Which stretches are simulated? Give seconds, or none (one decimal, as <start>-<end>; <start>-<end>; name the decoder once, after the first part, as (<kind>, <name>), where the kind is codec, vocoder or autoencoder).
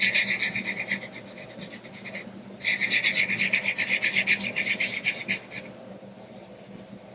none